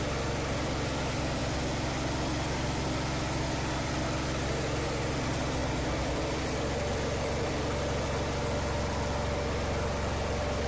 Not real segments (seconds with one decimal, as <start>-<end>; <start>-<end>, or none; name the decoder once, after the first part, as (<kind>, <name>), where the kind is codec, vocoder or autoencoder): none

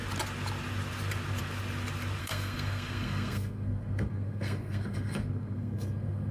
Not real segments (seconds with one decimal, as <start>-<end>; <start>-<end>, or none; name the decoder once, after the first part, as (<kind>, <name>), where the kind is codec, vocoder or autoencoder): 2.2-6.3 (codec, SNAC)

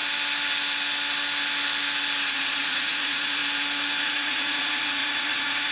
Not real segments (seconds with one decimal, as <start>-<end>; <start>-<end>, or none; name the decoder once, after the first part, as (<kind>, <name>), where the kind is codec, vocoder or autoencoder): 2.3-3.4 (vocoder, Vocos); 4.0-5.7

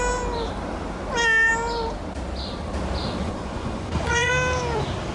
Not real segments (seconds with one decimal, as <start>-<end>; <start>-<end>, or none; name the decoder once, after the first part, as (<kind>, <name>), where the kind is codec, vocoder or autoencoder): 3.2-4.3 (vocoder, Vocos)

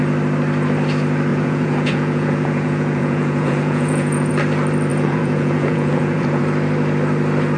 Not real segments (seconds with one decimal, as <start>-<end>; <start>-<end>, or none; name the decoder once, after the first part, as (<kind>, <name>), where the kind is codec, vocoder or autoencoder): 1.3-4.3 (vocoder, Vocos); 4.9-6.4

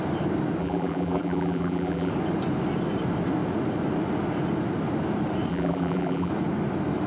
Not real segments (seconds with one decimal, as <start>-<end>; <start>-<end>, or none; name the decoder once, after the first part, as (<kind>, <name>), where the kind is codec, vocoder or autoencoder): 0.6-2.1 (vocoder, BigVGAN v2); 5.5-6.3